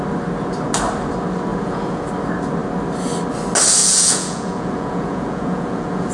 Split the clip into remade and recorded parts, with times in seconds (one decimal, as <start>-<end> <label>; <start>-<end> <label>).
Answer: 0.0-1.5 recorded; 1.5-2.1 remade; 2.1-3.8 recorded; 3.8-6.1 remade